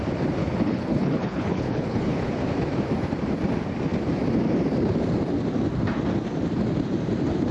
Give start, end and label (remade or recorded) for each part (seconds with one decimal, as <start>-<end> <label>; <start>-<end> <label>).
0.0-0.4 recorded; 0.4-2.3 remade; 2.3-7.5 recorded